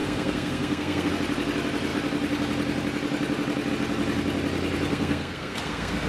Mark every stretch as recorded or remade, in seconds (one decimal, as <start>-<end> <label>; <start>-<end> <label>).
0.0-1.1 remade; 1.1-4.9 recorded; 4.9-6.1 remade